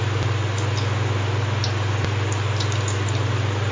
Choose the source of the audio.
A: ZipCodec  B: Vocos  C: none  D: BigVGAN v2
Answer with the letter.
C